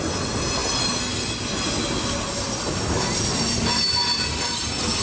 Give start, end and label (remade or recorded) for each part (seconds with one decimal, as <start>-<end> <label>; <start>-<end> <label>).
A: 0.0-5.0 recorded